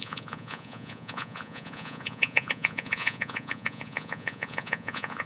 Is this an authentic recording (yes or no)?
no